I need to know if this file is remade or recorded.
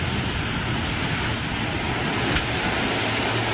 recorded